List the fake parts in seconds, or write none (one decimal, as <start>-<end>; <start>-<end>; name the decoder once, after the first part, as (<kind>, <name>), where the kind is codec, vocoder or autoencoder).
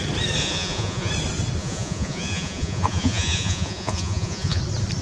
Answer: 0.4-1.1 (vocoder, Vocos); 1.6-4.6